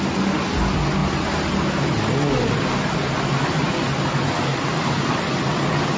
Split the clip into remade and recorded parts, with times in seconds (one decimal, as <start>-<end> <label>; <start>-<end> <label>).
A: 0.0-6.0 recorded